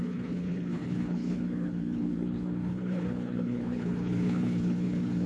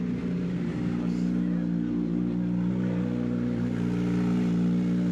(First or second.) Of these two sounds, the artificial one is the first